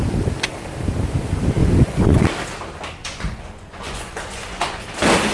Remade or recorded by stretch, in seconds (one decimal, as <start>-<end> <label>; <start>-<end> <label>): 0.0-1.6 recorded; 1.6-2.2 remade; 2.2-3.0 recorded; 3.0-4.8 remade; 4.8-5.3 recorded